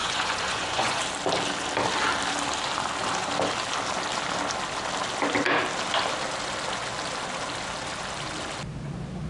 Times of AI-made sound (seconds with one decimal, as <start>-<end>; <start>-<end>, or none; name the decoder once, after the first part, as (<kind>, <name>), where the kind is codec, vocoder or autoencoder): 0.0-1.0 (vocoder, Vocos)